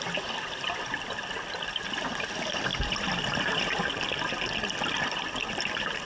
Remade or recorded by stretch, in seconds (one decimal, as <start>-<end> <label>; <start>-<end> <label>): 0.0-2.7 remade; 2.7-4.6 recorded; 4.6-6.0 remade